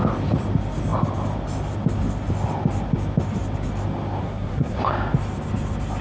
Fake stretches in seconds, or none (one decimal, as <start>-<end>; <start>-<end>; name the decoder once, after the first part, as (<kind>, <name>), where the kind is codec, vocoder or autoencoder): 4.2-4.8 (codec, SNAC)